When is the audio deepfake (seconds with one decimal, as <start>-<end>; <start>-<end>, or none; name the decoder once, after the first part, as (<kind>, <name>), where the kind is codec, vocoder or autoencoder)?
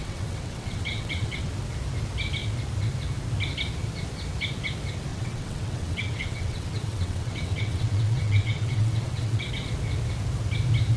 0.0-1.5 (vocoder, WaveNeXt); 5.1-9.5